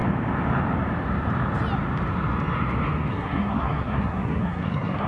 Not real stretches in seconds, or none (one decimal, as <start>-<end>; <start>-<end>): 3.1-5.1